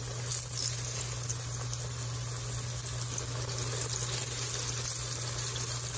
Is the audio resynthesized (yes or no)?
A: no